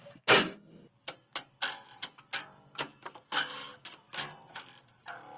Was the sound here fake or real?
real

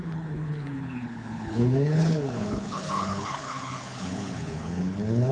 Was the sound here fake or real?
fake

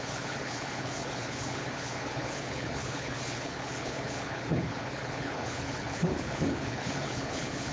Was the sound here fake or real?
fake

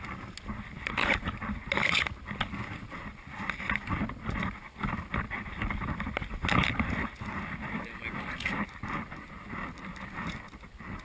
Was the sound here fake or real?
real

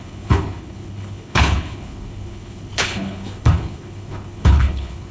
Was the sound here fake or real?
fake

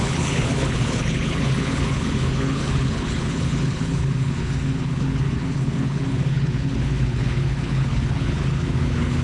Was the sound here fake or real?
fake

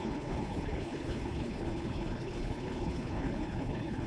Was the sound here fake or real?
fake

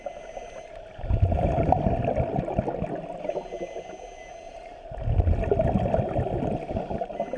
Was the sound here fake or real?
real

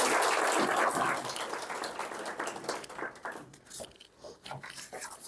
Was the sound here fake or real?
real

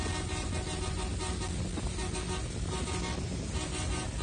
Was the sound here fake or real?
real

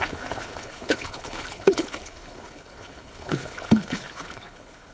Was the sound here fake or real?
fake